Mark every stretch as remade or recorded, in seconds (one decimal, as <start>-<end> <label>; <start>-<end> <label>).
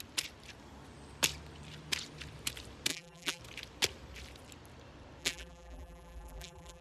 0.0-2.9 recorded; 2.9-3.4 remade; 3.4-5.2 recorded; 5.2-6.8 remade